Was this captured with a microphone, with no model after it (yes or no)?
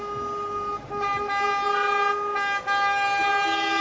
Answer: yes